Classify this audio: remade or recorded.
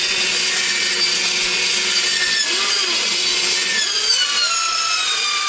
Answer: recorded